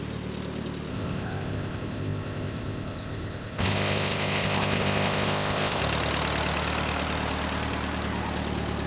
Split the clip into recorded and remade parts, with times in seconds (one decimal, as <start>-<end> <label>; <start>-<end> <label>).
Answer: 0.0-0.9 recorded; 0.9-5.8 remade; 5.8-8.9 recorded